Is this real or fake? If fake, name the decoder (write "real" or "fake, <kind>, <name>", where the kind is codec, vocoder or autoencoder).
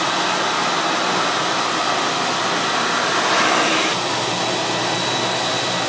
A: real